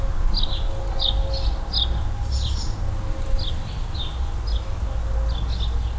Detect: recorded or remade recorded